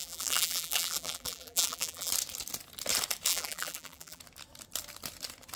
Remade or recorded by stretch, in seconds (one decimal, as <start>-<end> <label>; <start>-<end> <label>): 0.0-2.1 remade; 2.1-3.3 recorded; 3.3-4.2 remade; 4.2-5.6 recorded